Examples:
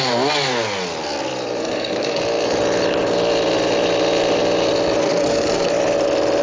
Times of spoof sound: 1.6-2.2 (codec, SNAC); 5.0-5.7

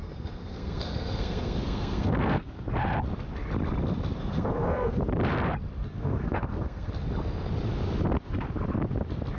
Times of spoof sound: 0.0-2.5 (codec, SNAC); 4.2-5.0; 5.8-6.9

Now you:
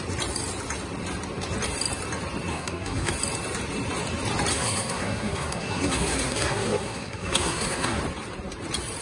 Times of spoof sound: 2.5-3.1 (codec, SNAC); 4.5-8.0

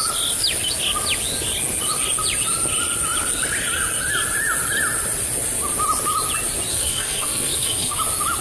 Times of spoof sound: 6.7-8.0 (codec, SNAC)